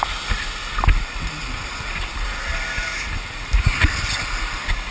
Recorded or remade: recorded